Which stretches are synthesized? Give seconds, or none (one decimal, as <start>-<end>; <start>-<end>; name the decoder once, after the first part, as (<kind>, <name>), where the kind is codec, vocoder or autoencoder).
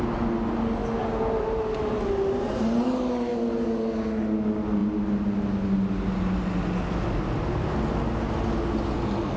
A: none